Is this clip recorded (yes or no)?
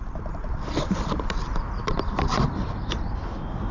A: yes